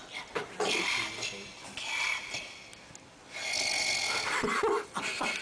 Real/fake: real